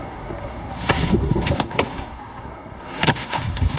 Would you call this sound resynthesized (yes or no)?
yes